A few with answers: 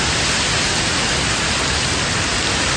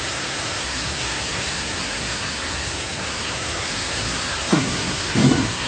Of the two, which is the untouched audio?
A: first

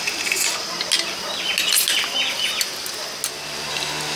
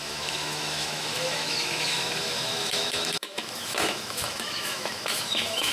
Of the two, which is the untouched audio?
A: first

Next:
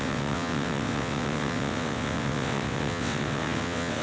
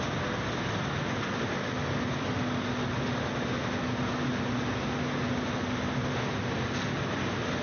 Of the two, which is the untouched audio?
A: second